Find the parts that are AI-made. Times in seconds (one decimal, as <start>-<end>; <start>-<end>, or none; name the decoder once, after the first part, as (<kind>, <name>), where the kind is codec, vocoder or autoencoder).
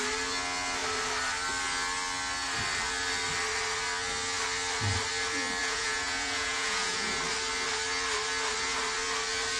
5.6-7.1 (vocoder, Vocos)